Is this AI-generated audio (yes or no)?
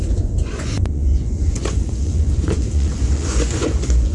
yes